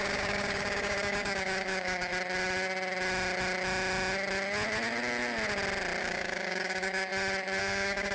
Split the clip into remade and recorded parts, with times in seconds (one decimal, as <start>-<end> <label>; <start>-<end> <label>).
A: 0.0-2.1 remade; 2.1-6.0 recorded; 6.0-7.1 remade; 7.1-7.6 recorded; 7.6-8.1 remade